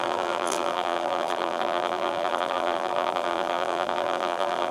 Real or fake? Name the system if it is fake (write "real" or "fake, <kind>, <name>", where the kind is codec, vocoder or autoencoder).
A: fake, vocoder, BigVGAN v2